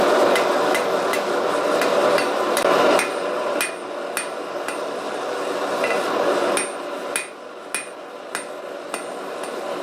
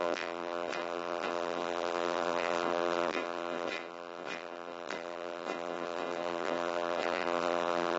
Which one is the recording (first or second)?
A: first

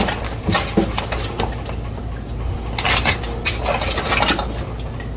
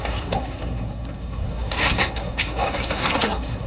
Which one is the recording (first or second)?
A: first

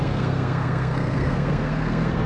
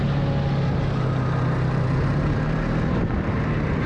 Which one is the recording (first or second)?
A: second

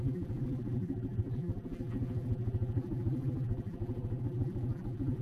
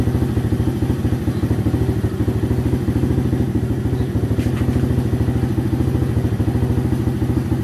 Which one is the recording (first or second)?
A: second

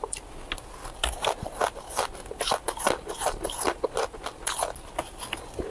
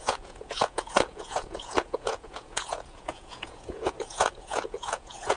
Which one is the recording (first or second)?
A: first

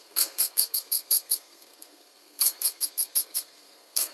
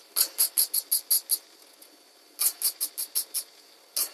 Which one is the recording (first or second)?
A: second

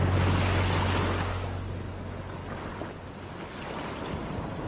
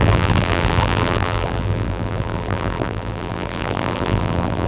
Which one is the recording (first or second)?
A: first